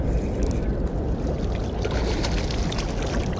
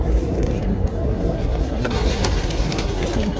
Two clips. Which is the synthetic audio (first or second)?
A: second